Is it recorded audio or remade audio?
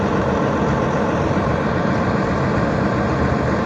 remade